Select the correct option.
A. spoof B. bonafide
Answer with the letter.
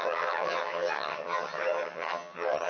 A